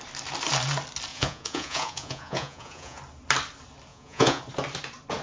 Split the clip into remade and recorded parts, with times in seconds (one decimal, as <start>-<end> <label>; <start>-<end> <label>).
0.0-1.1 recorded; 1.1-3.0 remade; 3.0-3.9 recorded; 3.9-4.4 remade; 4.4-5.2 recorded

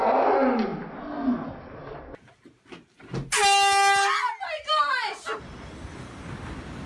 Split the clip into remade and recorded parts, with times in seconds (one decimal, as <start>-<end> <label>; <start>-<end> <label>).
0.0-6.9 recorded

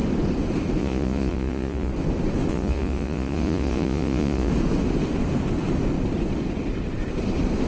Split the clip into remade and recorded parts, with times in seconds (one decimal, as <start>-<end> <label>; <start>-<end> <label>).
0.0-0.8 recorded; 0.8-1.9 remade; 1.9-2.5 recorded; 2.5-4.5 remade; 4.5-7.7 recorded

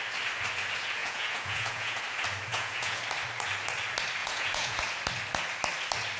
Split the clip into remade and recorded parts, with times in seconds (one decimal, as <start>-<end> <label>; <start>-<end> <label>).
0.0-1.0 recorded; 1.0-2.0 remade; 2.0-2.5 recorded; 2.5-3.0 remade; 3.0-4.2 recorded; 4.2-4.8 remade; 4.8-6.2 recorded